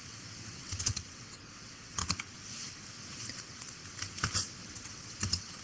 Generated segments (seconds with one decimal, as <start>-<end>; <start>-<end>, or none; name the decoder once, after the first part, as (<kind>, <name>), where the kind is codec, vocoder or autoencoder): 0.0-2.0 (vocoder, WaveNeXt); 3.2-3.8; 4.6-5.6